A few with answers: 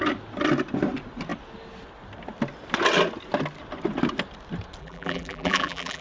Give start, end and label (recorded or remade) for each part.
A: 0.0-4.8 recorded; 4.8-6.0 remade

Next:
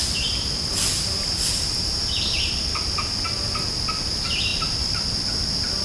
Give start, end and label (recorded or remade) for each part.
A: 0.0-2.5 remade; 2.5-5.8 recorded

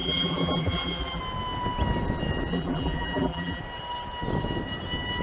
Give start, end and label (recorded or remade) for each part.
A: 0.0-1.2 remade; 1.2-2.5 recorded; 2.5-3.6 remade; 3.6-5.2 recorded

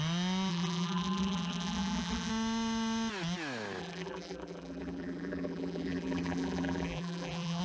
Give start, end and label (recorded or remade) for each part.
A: 0.0-0.5 recorded; 0.5-2.3 remade; 2.3-3.8 recorded; 3.8-7.6 remade

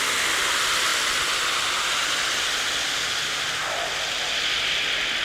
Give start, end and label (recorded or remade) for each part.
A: 0.0-5.2 recorded

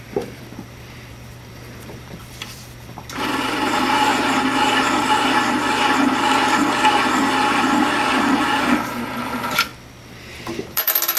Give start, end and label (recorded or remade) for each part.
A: 0.0-4.1 remade; 4.1-8.4 recorded; 8.4-9.7 remade; 9.7-10.7 recorded; 10.7-11.2 remade

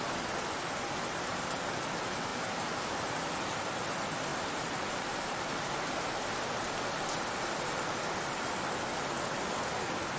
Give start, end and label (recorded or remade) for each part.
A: 0.0-2.3 recorded; 2.3-3.3 remade; 3.3-4.3 recorded; 4.3-5.6 remade; 5.6-10.2 recorded

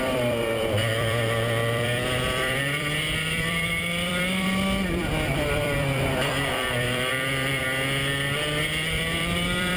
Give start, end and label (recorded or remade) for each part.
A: 0.0-7.6 remade; 7.6-8.6 recorded; 8.6-9.8 remade